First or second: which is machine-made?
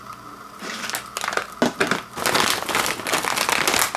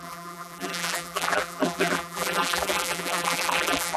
second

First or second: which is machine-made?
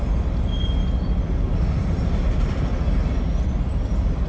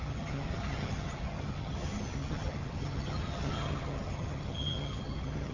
second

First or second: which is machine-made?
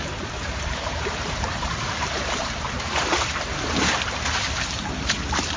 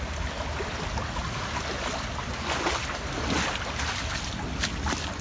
first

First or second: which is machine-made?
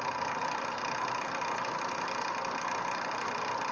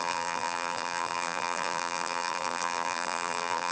second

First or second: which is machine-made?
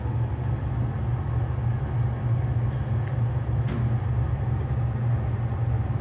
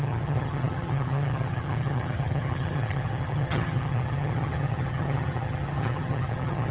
second